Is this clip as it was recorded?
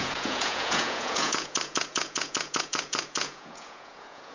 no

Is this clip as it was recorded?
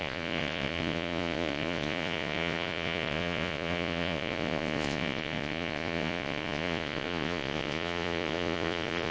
no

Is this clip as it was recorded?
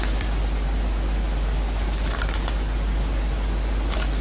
yes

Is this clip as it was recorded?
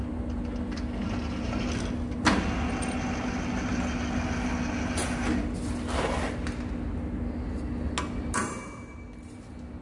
yes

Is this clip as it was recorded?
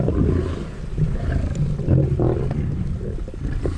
yes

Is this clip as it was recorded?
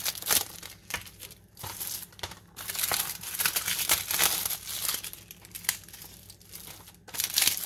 no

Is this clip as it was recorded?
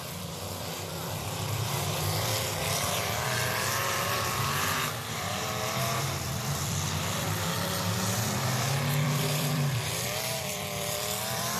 no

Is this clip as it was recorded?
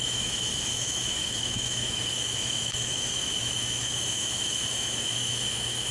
no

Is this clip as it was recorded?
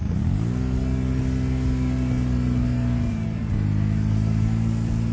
yes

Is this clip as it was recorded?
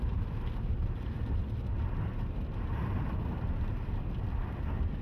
yes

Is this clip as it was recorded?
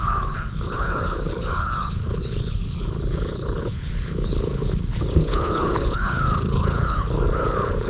no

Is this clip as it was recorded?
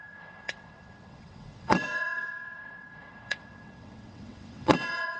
no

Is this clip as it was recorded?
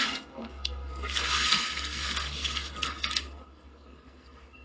no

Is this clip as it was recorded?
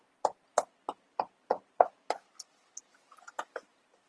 yes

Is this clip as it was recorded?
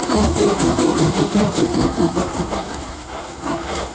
no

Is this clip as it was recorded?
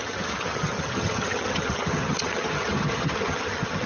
no